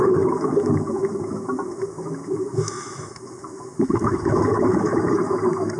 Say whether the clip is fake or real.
fake